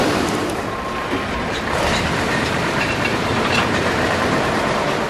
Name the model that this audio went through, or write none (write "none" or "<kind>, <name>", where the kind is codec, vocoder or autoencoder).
vocoder, BigVGAN v2